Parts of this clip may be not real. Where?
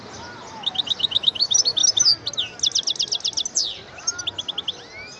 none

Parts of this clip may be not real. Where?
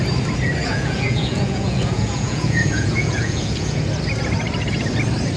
0.6-3.8 (vocoder, Vocos)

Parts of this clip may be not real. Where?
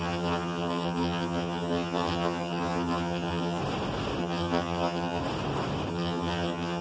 0.0-3.6 (vocoder, HiFi-GAN); 4.2-5.2; 5.9-6.8